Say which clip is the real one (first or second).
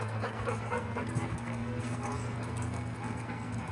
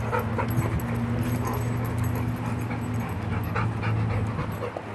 second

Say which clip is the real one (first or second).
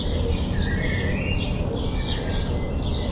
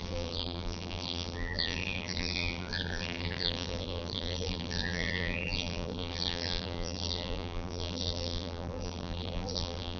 first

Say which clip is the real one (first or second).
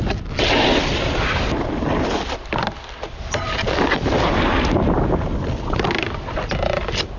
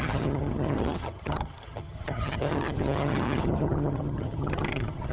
first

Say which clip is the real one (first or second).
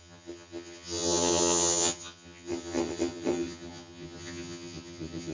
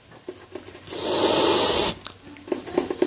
second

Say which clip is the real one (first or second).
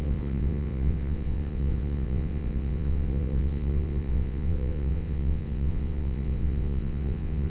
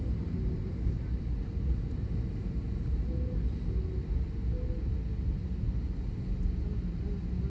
second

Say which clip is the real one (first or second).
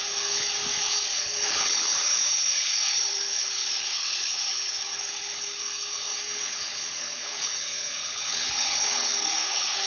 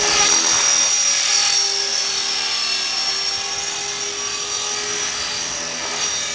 second